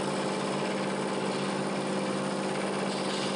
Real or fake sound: real